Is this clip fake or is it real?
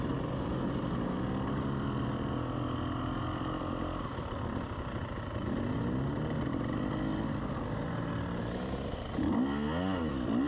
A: real